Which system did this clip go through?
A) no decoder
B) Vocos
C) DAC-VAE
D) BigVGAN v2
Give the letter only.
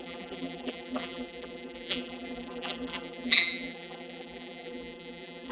D